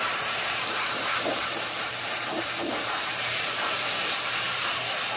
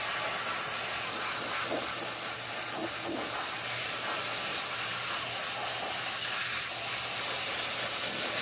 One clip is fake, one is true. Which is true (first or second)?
second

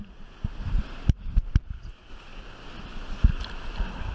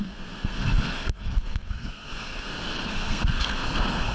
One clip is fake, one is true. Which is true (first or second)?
first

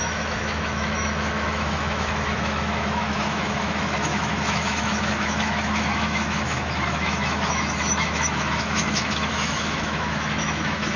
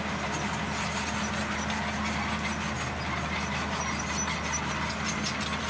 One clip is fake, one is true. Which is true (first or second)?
second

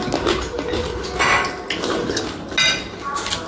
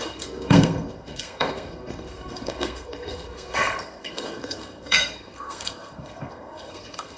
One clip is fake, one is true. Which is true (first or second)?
first